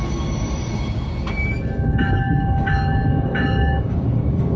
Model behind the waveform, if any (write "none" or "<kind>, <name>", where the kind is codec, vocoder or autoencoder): codec, DAC